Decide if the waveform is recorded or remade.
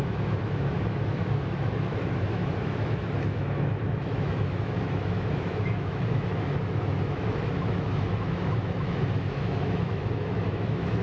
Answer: remade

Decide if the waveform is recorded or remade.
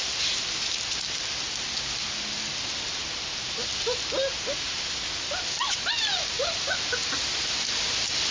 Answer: recorded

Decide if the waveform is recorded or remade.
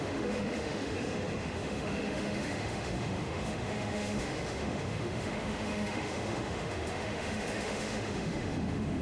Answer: remade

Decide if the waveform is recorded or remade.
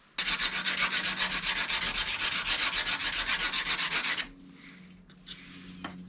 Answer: recorded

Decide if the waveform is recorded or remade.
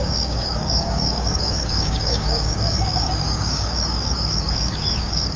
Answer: remade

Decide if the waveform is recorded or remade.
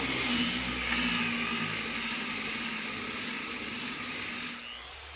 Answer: recorded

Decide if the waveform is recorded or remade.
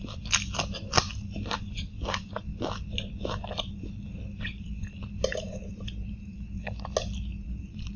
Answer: recorded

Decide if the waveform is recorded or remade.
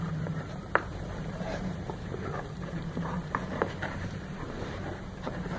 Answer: remade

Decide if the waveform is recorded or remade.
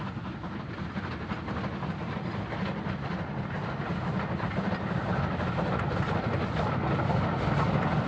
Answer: recorded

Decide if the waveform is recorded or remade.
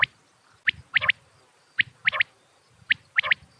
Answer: recorded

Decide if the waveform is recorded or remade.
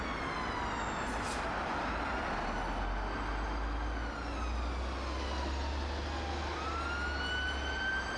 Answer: recorded